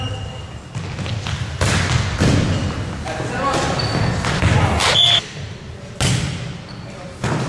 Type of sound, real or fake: real